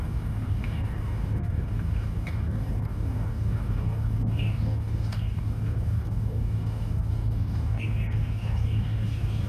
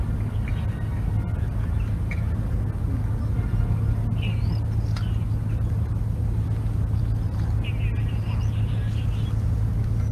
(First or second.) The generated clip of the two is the first